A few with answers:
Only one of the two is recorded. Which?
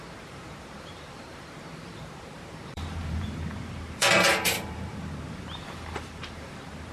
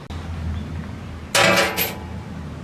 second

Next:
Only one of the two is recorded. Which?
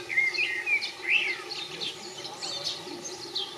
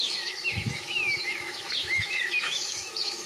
first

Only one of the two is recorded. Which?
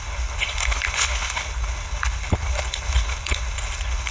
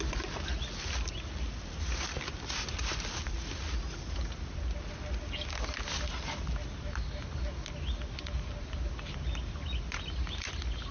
second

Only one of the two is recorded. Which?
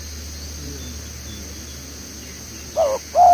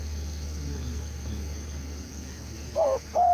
first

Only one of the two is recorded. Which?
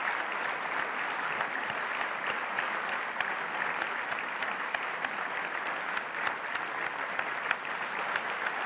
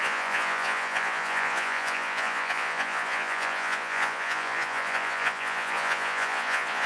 first